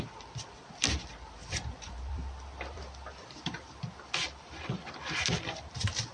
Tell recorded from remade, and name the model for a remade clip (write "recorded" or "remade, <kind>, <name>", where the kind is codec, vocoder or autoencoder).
remade, vocoder, BigVGAN v2